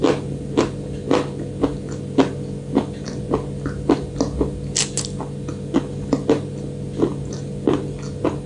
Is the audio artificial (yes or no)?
no